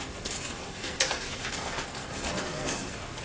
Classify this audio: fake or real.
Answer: fake